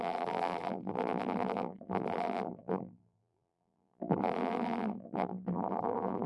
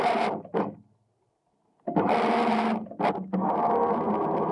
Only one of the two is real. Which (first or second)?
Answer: second